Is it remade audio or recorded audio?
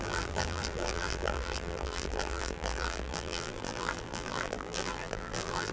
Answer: remade